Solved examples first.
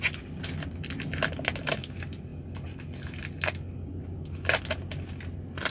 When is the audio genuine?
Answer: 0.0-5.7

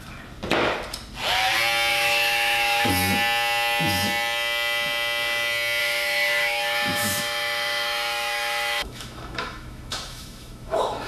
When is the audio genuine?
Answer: 0.0-1.9; 2.9-5.8

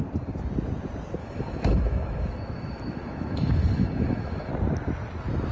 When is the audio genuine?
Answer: 0.0-1.2; 4.5-5.5

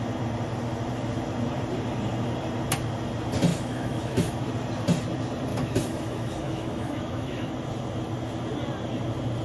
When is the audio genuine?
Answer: 0.0-3.5; 4.5-5.5; 7.5-9.4

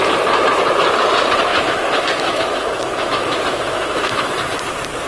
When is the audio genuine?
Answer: 0.0-1.5; 4.6-5.1

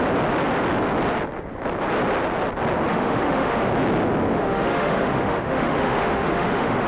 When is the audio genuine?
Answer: 0.0-2.9; 3.7-4.3

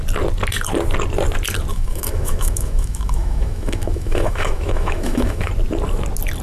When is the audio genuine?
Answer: 0.0-1.7; 5.5-6.4

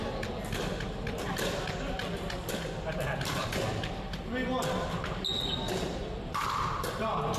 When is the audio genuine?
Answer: 0.0-7.4